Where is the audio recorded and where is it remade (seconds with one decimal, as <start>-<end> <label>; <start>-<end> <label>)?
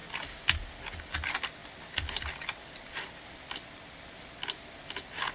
0.0-0.7 remade; 0.7-1.6 recorded; 1.6-4.8 remade; 4.8-5.3 recorded